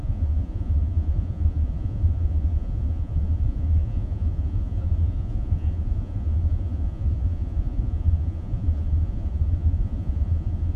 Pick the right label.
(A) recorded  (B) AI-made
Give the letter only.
B